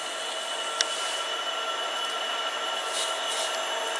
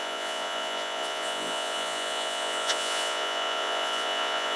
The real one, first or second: first